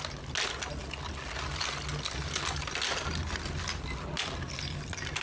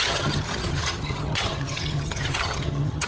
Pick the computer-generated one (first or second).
second